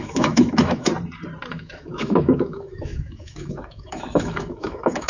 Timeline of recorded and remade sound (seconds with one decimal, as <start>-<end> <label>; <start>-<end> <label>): 0.0-0.9 remade; 0.9-1.5 recorded; 1.5-5.1 remade